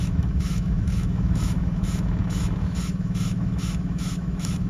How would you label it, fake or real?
fake